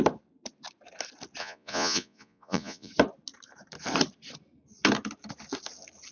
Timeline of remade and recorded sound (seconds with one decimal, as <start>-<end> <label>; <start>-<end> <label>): 0.0-1.4 recorded; 1.4-2.9 remade; 2.9-6.1 recorded

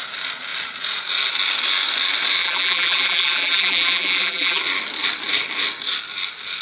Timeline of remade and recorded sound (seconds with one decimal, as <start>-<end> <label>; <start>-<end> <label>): 0.0-2.4 recorded; 2.4-4.6 remade; 4.6-6.6 recorded

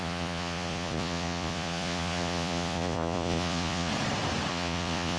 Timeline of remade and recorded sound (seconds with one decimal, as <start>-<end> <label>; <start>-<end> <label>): 0.0-3.9 remade; 3.9-4.5 recorded; 4.5-5.2 remade

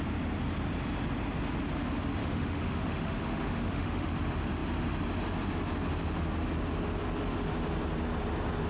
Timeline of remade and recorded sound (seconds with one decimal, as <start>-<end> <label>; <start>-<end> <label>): 0.0-2.2 recorded; 2.2-4.1 remade; 4.1-8.7 recorded

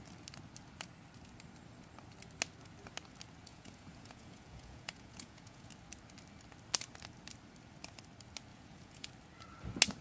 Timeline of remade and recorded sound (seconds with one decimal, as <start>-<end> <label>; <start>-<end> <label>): 0.0-3.5 recorded; 3.5-5.7 remade; 5.7-8.5 recorded; 8.5-9.1 remade; 9.1-10.0 recorded

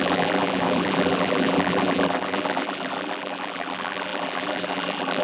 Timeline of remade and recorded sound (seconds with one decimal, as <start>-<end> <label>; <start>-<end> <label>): 0.0-5.2 remade

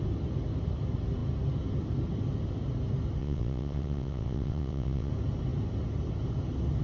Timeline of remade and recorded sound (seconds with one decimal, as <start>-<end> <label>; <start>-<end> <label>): 0.0-3.2 recorded; 3.2-5.1 remade; 5.1-6.8 recorded